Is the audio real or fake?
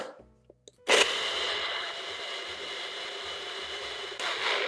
real